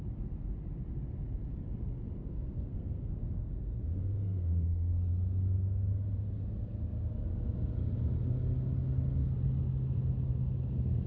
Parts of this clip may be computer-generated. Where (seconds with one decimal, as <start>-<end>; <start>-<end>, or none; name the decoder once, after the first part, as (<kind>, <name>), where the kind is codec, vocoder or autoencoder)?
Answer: 2.3-5.1 (codec, SNAC)